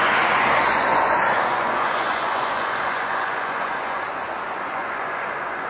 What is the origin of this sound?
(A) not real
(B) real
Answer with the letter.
A